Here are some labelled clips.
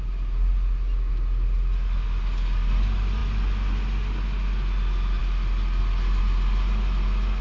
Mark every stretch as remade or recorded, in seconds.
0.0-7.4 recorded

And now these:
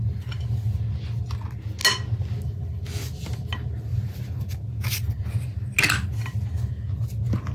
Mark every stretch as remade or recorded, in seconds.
0.0-3.9 recorded; 3.9-4.5 remade; 4.5-7.5 recorded

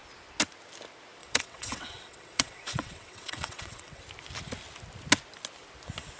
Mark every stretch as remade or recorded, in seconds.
0.0-1.2 recorded; 1.2-4.0 remade; 4.0-6.2 recorded